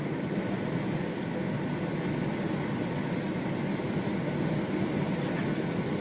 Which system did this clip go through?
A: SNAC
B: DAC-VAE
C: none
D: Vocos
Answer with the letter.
C